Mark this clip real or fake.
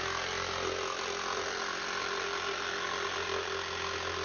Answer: real